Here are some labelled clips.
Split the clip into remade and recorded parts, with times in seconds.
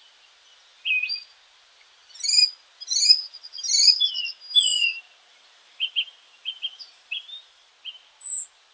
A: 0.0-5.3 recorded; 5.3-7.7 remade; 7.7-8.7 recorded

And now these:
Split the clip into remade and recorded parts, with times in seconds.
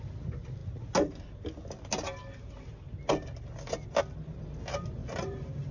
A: 0.0-5.0 recorded; 5.0-5.7 remade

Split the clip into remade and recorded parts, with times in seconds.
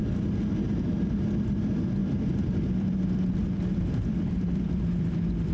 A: 0.0-2.0 recorded; 2.0-5.5 remade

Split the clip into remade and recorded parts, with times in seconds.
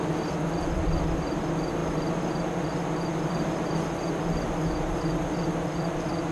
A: 0.0-6.3 recorded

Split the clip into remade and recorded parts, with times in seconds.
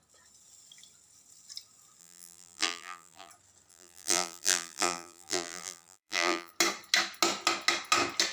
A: 0.0-2.0 recorded; 2.0-3.3 remade; 3.3-3.7 recorded; 3.7-6.5 remade; 6.5-8.3 recorded